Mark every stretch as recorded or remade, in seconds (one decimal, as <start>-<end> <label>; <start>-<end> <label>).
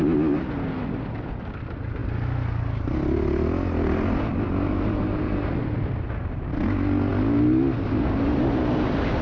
0.0-9.2 recorded